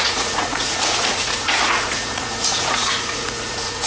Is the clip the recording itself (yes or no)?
no